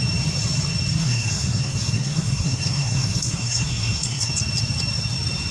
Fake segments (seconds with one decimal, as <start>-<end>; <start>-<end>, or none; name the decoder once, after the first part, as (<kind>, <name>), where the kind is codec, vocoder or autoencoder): 1.0-4.3 (codec, SNAC)